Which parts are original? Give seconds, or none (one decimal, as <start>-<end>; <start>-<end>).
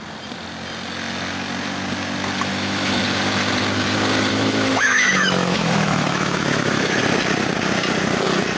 0.0-2.5; 3.0-4.3; 7.0-8.6